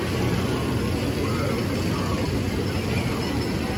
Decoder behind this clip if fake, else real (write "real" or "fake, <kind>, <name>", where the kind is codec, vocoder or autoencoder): real